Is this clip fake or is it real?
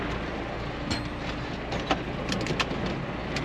real